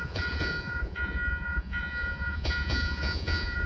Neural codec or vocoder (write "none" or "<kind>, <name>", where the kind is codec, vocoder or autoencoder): vocoder, Vocos